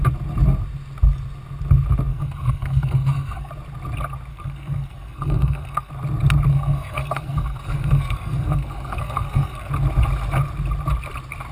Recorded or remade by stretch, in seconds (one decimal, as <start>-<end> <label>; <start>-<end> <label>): 0.0-2.1 recorded; 2.1-3.5 remade; 3.5-4.3 recorded; 4.3-5.9 remade; 5.9-6.5 recorded; 6.5-9.7 remade; 9.7-11.5 recorded